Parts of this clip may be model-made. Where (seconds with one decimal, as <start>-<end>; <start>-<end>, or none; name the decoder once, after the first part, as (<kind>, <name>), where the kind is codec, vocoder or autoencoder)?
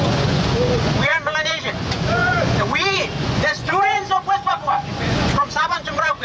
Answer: 0.0-1.1 (vocoder, Vocos); 1.7-6.2